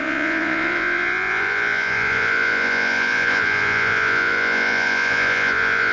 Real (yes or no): no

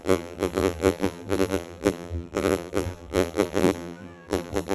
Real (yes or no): no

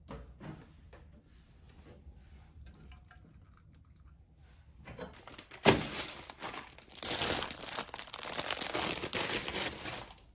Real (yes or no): yes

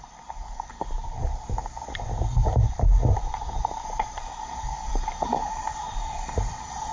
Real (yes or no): no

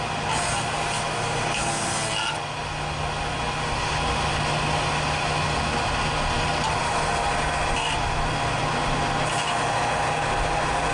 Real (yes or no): yes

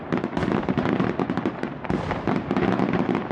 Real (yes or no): yes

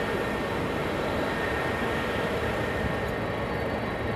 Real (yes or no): yes